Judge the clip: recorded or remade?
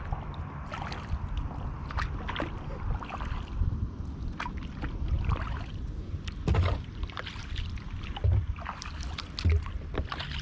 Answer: recorded